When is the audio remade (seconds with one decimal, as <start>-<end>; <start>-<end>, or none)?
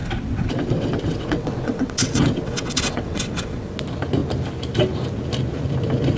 0.0-3.7